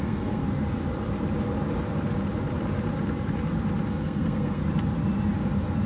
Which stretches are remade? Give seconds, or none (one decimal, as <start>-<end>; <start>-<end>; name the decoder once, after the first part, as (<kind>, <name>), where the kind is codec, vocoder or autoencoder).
0.0-0.4 (codec, SNAC); 3.9-4.6